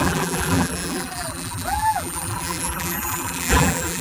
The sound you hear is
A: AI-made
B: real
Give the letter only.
A